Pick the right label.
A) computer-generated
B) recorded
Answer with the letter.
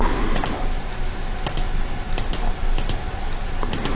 B